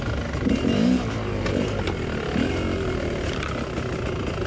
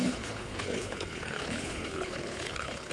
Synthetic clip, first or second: second